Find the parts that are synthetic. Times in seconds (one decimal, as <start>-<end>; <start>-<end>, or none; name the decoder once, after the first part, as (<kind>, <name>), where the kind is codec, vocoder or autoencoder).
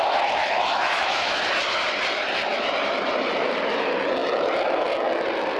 0.4-1.4 (autoencoder, DAC-VAE)